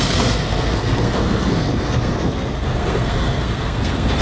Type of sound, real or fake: fake